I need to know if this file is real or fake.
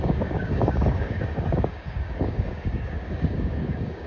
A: fake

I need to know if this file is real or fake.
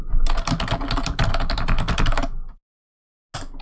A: real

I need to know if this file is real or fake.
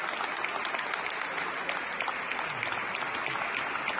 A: real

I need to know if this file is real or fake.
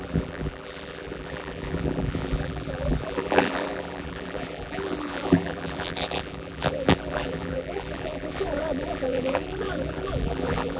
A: fake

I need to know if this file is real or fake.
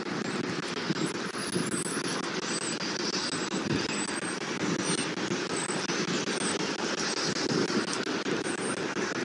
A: real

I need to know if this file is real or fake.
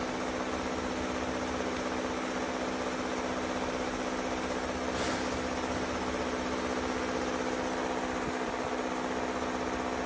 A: real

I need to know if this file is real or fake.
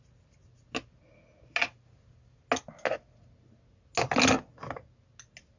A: real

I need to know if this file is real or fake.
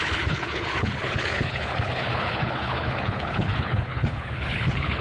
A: fake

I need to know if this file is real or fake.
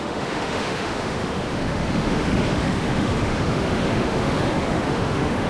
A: fake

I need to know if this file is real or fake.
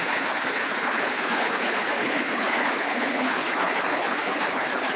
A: fake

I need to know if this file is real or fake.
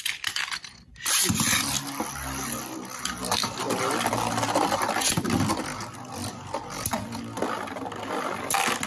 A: real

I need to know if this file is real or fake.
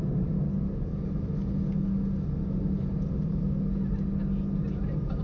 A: real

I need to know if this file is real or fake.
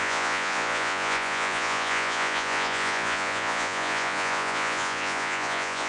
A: fake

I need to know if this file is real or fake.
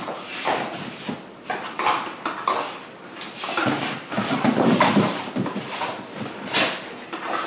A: real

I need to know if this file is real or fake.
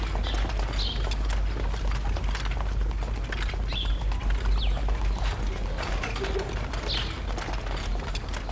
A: real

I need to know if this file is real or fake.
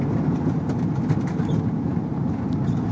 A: real